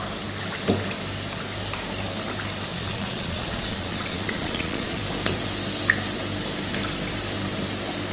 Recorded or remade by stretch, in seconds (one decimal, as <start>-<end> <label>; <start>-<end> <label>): 0.0-2.7 recorded; 2.7-5.0 remade; 5.0-8.1 recorded